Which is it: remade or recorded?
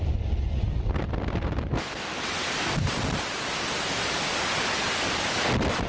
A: recorded